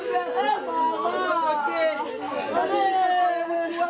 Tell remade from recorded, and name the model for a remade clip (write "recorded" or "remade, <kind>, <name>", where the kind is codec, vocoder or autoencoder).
recorded